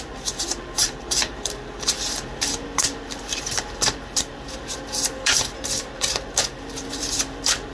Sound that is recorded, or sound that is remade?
remade